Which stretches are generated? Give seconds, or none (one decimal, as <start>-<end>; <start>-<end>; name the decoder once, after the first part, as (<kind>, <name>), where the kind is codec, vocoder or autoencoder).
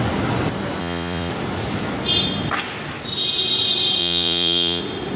0.8-1.3 (vocoder, Vocos); 4.0-4.8